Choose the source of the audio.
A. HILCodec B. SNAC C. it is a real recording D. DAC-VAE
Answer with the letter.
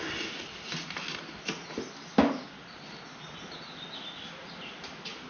C